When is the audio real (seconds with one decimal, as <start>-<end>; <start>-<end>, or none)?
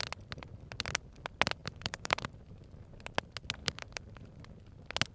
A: 0.0-1.6; 2.3-3.6; 4.4-5.1